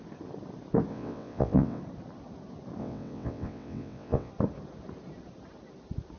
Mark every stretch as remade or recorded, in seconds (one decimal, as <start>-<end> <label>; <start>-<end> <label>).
0.0-0.9 recorded; 0.9-1.8 remade; 1.8-2.8 recorded; 2.8-4.3 remade; 4.3-6.2 recorded